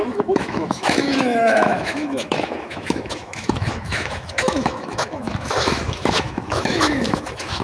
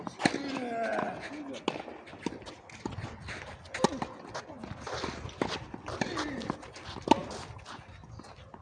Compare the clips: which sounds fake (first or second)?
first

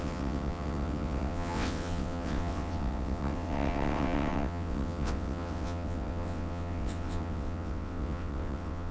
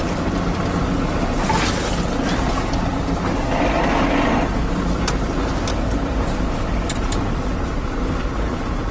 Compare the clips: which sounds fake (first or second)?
first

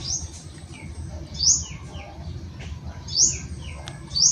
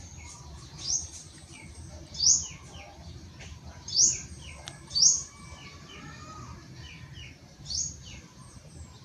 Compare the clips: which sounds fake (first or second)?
second